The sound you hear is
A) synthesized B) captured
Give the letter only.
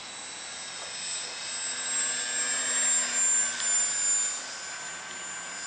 B